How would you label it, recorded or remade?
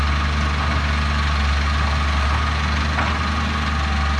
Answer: recorded